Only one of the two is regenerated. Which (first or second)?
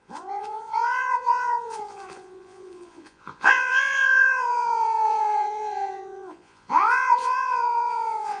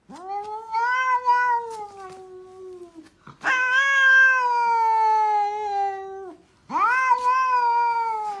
first